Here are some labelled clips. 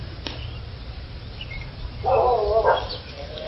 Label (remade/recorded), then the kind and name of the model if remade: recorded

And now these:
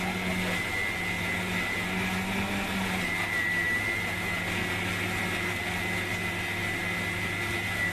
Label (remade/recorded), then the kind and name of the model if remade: recorded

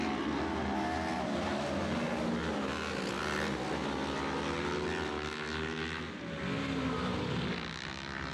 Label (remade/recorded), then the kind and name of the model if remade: recorded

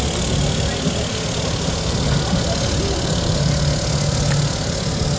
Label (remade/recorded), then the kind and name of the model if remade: recorded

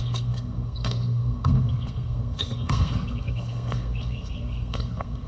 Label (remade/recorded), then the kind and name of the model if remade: remade, codec, SNAC